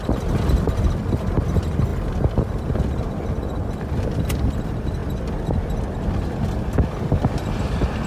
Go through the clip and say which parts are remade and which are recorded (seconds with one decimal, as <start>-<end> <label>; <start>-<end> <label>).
0.0-8.1 recorded